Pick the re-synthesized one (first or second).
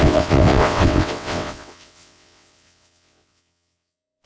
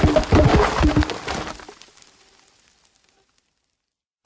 first